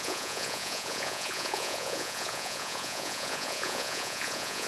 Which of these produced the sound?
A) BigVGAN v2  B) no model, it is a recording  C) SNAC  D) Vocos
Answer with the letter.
D